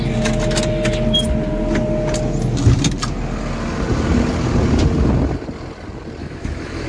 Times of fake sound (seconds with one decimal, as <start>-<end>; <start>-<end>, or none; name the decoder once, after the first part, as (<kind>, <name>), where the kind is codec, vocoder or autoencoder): 6.2-6.9 (autoencoder, DAC-VAE)